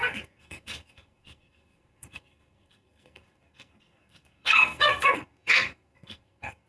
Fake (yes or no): yes